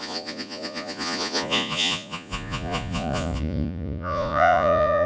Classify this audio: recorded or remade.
remade